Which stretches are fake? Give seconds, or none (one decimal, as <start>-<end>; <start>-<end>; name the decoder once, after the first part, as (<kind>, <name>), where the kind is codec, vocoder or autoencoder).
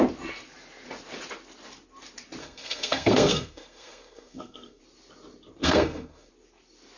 2.4-4.8 (codec, SNAC); 5.6-6.3